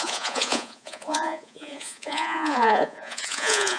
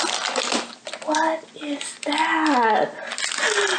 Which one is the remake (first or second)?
first